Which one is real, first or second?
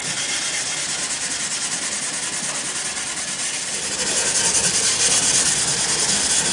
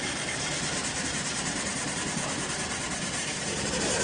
first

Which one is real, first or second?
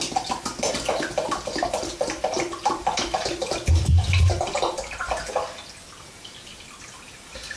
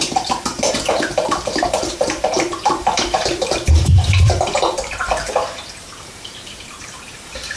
first